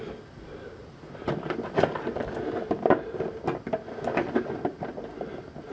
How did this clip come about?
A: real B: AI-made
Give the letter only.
A